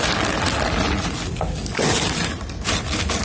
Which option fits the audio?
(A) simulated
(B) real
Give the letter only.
B